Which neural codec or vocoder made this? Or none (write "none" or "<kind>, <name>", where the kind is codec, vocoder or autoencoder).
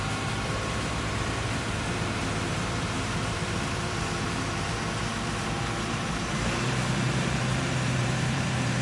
vocoder, BigVGAN v2